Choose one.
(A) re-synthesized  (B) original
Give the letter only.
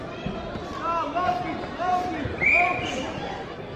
B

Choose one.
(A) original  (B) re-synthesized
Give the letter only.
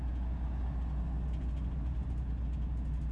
A